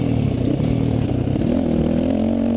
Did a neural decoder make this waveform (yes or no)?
no